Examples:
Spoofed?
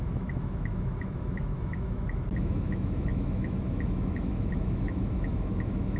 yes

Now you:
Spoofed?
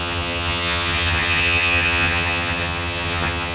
yes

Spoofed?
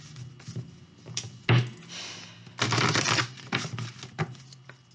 no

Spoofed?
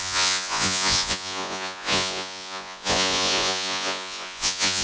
yes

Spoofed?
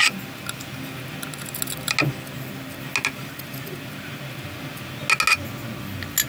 no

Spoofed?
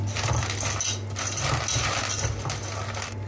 no